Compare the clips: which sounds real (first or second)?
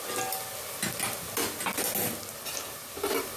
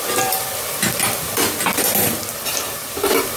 first